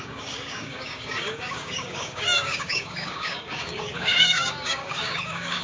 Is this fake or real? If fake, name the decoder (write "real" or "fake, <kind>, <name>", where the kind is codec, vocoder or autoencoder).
fake, codec, DAC